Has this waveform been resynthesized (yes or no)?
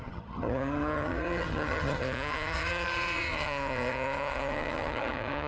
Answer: yes